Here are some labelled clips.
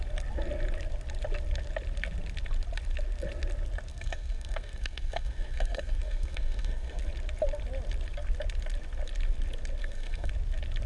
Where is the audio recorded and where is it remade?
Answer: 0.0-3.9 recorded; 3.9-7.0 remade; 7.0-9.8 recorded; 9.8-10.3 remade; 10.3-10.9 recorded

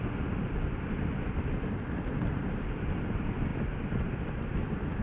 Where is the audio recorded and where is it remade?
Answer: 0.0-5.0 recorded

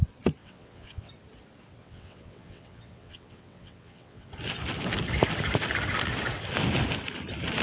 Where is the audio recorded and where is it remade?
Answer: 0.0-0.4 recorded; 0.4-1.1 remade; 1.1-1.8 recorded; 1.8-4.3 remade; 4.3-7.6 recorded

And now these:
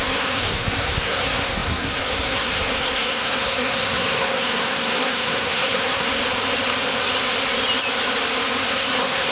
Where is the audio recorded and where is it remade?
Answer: 0.0-6.2 remade; 6.2-8.7 recorded; 8.7-9.3 remade